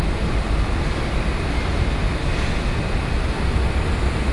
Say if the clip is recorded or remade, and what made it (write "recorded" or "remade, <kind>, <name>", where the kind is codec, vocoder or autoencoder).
recorded